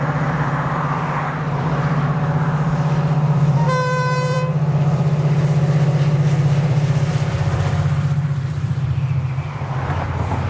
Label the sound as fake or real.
fake